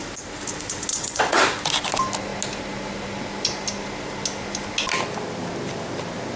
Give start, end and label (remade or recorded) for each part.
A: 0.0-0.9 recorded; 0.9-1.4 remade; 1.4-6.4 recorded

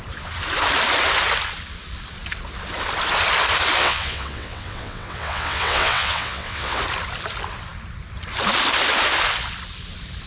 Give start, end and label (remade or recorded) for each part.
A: 0.0-3.8 recorded; 3.8-6.8 remade; 6.8-10.3 recorded

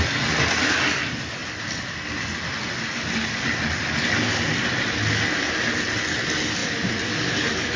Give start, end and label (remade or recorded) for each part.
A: 0.0-7.8 recorded